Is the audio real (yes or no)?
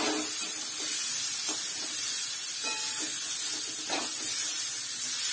yes